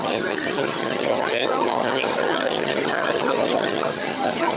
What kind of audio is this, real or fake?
fake